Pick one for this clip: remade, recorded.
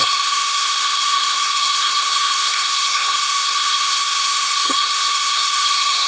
remade